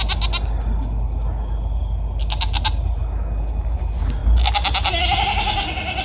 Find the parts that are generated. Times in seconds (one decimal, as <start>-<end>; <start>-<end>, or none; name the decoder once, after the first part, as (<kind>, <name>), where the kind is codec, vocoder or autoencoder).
none